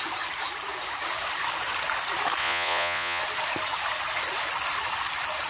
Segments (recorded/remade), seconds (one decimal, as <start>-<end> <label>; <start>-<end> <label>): 0.0-2.4 recorded; 2.4-3.2 remade; 3.2-5.5 recorded